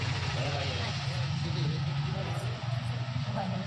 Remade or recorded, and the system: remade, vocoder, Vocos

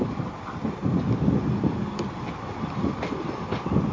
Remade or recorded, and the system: recorded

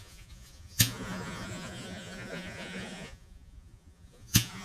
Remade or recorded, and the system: remade, vocoder, Vocos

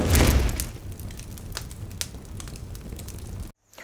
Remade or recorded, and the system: recorded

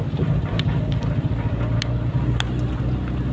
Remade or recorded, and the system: recorded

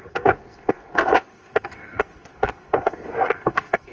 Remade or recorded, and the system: remade, codec, SNAC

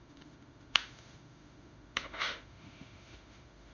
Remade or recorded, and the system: remade, autoencoder, DAC-VAE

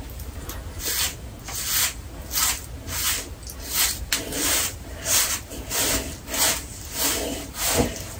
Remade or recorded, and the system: recorded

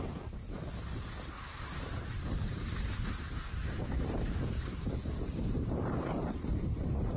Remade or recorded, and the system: remade, vocoder, BigVGAN v2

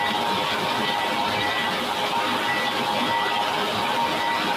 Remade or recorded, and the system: recorded